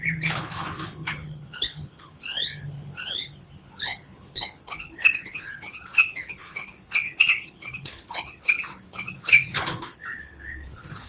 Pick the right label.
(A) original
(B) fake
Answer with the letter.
B